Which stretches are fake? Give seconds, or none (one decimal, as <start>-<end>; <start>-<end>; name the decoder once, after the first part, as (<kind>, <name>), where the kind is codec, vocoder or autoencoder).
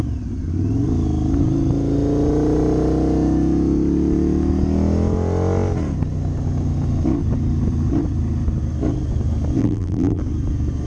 9.6-10.2 (vocoder, BigVGAN v2)